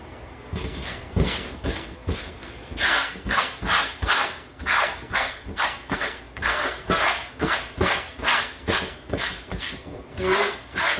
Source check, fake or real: fake